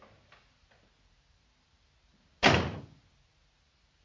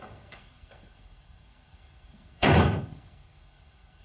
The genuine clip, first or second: first